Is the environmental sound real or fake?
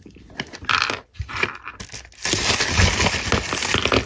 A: real